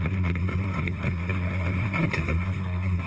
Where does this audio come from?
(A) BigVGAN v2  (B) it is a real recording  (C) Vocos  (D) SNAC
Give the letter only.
D